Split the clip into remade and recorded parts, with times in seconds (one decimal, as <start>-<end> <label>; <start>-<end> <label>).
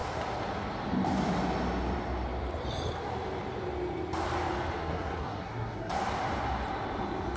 0.0-4.8 recorded; 4.8-5.9 remade; 5.9-7.4 recorded